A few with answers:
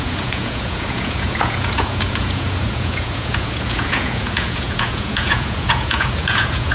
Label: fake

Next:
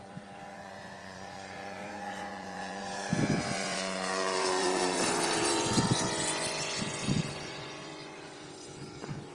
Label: fake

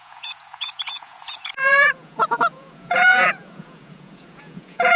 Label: fake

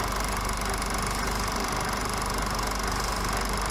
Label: real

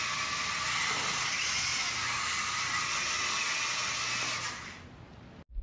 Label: real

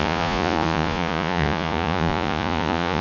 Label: fake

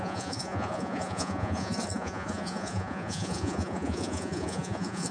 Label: fake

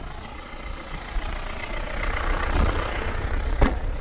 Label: fake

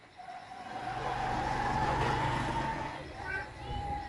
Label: fake